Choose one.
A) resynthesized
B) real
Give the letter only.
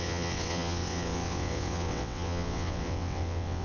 A